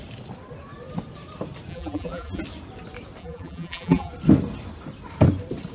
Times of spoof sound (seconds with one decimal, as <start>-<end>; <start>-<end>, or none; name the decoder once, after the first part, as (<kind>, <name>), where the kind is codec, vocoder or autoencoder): 1.7-2.4 (vocoder, BigVGAN v2); 3.2-4.1